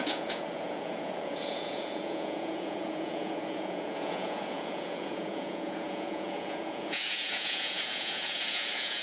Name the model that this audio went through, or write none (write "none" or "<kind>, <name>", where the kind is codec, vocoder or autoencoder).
vocoder, Vocos